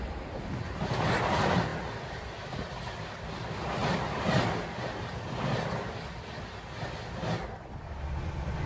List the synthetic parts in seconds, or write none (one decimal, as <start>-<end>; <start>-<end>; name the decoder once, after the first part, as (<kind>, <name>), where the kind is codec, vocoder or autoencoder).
none